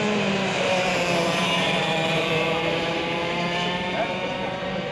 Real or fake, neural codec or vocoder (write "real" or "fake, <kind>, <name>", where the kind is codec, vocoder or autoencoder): fake, vocoder, BigVGAN v2